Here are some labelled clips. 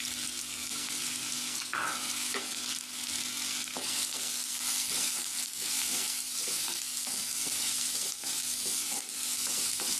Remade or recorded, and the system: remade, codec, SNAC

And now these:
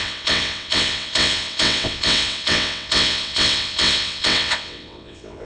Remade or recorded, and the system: remade, vocoder, WaveNeXt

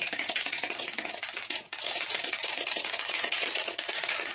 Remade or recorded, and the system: remade, vocoder, Vocos